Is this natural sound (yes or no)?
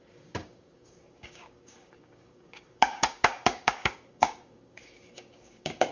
no